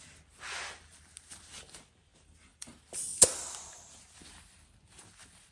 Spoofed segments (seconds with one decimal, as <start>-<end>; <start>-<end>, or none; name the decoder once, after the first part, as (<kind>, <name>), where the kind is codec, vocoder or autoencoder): 2.1-2.7 (vocoder, BigVGAN v2)